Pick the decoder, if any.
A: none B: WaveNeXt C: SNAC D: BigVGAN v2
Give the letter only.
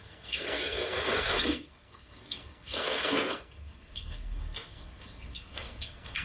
C